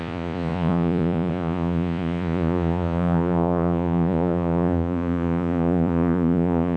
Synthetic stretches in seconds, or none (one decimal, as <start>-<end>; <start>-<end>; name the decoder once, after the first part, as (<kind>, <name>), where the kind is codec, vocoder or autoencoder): 0.0-6.8 (vocoder, Vocos)